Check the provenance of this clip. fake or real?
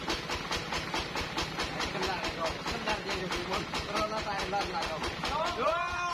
real